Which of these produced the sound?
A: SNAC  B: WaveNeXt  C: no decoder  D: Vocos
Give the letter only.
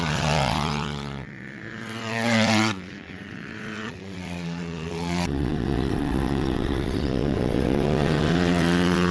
B